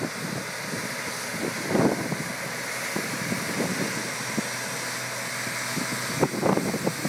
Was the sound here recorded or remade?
recorded